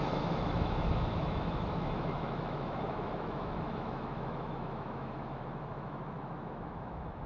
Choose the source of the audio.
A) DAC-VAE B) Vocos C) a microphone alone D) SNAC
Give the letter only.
A